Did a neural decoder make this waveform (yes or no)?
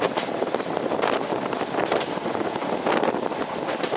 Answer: no